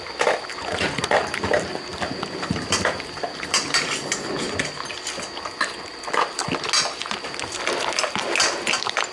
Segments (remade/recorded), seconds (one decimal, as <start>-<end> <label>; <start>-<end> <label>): 0.0-1.9 recorded; 1.9-4.0 remade; 4.0-9.1 recorded